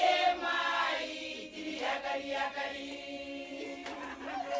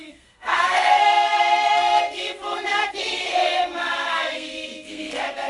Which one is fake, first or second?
second